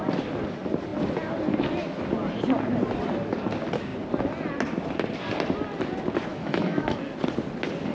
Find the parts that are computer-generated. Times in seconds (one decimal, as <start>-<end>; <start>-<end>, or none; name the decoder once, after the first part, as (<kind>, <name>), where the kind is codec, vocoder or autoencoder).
6.3-7.0 (autoencoder, DAC-VAE)